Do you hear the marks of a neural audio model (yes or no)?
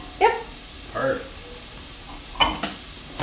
no